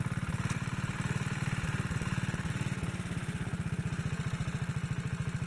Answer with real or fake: real